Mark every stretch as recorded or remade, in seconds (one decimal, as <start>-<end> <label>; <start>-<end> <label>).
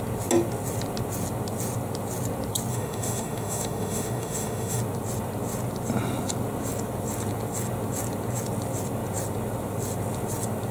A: 0.0-2.7 recorded; 2.7-4.8 remade; 4.8-10.7 recorded